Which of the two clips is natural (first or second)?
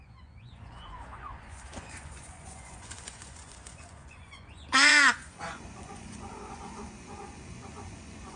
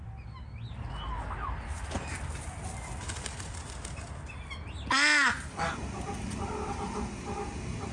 second